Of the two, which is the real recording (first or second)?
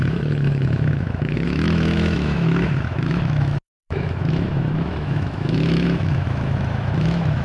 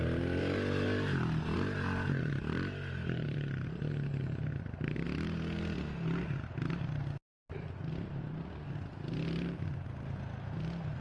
second